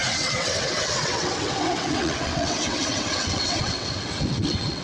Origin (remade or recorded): remade